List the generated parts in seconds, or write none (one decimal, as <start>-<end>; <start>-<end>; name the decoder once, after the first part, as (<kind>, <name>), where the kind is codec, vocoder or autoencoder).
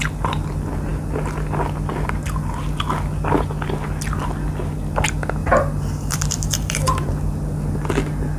5.4-7.1 (vocoder, BigVGAN v2)